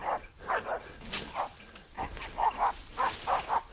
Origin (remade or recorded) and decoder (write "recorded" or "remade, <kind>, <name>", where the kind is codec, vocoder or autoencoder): recorded